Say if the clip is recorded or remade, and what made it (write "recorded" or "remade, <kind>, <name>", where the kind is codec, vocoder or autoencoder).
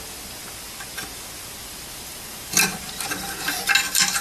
recorded